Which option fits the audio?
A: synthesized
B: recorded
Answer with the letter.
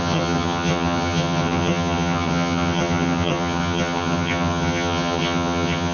A